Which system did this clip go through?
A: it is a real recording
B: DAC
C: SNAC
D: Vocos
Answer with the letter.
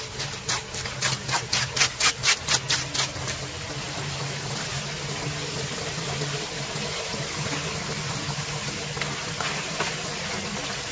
A